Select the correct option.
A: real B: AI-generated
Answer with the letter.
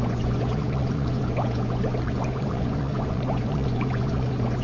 B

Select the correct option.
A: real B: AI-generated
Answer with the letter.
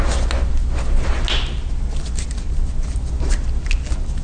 A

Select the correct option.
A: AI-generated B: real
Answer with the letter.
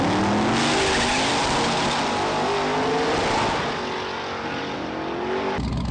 B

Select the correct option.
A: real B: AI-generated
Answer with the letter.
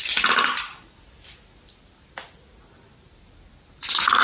A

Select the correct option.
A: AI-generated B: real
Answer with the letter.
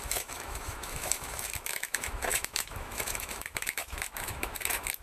A